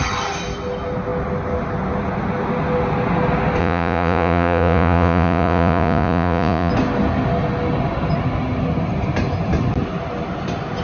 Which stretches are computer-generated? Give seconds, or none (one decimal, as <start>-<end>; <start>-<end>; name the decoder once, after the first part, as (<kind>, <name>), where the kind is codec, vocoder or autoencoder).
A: 3.6-6.7 (vocoder, Vocos)